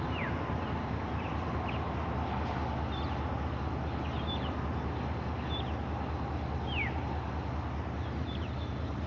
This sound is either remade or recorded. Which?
recorded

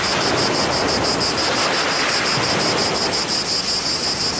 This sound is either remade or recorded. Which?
recorded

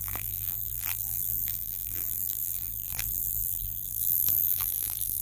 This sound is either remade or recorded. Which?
remade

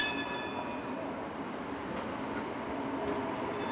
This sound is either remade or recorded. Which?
recorded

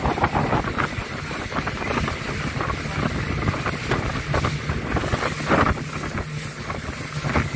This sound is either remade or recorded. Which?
recorded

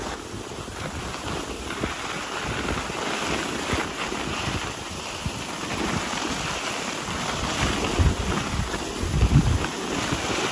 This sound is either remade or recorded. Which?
recorded